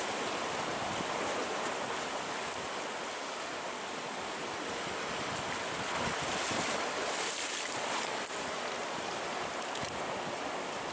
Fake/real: real